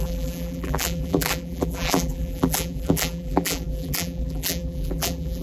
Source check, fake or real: fake